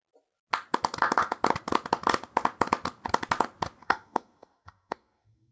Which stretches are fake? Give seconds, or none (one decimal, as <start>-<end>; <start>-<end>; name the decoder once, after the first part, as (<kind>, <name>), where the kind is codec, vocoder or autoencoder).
3.8-5.5 (codec, SNAC)